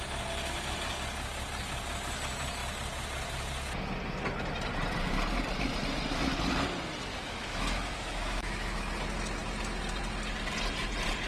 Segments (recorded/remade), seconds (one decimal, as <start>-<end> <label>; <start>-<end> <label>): 0.0-7.1 recorded; 7.1-8.8 remade; 8.8-11.3 recorded